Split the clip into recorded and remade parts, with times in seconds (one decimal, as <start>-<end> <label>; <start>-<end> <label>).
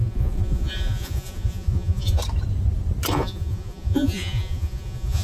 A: 0.0-2.2 remade; 2.2-3.1 recorded; 3.1-5.2 remade